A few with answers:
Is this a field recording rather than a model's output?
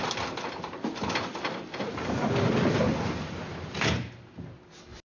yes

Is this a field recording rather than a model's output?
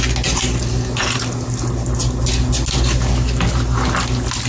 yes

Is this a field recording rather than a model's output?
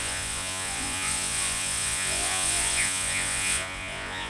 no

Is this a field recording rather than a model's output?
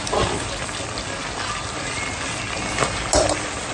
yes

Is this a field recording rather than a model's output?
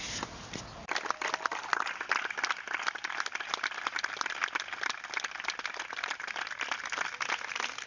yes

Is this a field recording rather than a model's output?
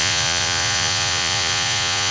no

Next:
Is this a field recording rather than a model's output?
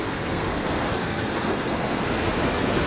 no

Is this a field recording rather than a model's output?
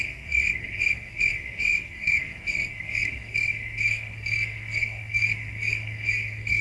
no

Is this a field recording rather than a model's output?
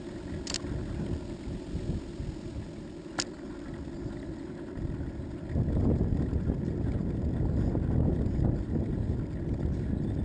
yes